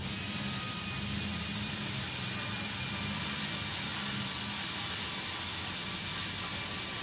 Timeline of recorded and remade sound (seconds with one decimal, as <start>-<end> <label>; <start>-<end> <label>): 0.0-7.0 recorded